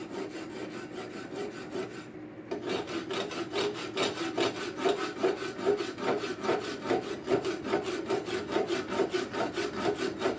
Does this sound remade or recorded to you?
recorded